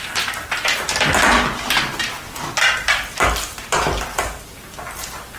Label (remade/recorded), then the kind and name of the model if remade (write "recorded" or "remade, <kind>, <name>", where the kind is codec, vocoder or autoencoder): recorded